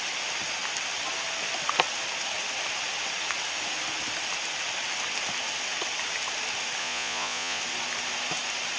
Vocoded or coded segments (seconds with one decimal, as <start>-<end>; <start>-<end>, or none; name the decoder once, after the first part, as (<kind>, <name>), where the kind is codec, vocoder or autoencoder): 6.8-7.6 (vocoder, Vocos)